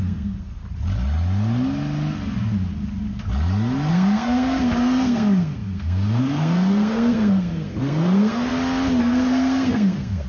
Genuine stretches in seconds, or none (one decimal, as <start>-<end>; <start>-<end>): 0.6-3.9; 8.5-9.0

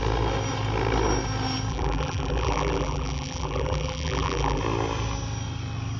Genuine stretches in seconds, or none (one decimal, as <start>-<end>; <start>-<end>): 0.0-1.7; 4.6-6.0

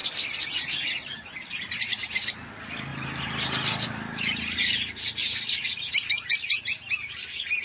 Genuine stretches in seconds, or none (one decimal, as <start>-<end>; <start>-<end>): 1.6-2.9; 6.8-7.6

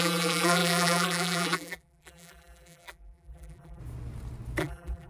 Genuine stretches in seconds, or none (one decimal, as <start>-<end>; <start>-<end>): 3.8-4.6

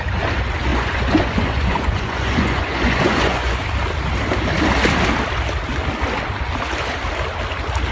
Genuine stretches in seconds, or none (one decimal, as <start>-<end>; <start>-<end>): 0.0-0.7; 3.6-7.9